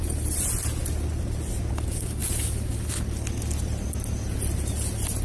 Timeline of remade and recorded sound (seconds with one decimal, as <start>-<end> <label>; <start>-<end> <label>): 0.0-5.2 recorded